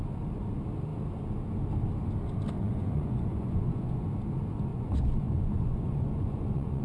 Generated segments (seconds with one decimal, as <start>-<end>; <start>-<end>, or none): 2.6-4.0; 4.7-6.8